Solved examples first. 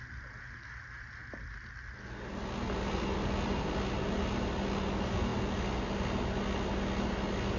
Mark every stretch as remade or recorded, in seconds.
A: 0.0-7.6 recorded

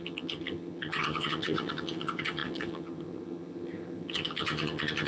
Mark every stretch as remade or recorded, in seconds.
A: 0.0-5.1 remade

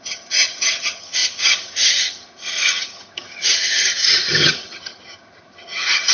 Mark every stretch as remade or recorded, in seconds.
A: 0.0-6.1 remade

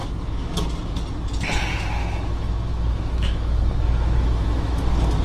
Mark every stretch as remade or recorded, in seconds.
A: 0.0-0.5 remade; 0.5-1.7 recorded; 1.7-4.8 remade; 4.8-5.2 recorded

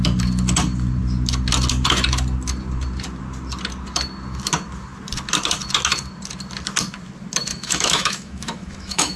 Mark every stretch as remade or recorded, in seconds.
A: 0.0-7.5 recorded; 7.5-9.2 remade

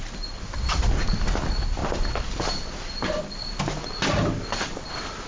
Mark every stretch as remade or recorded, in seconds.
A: 0.0-1.8 recorded; 1.8-3.2 remade; 3.2-5.3 recorded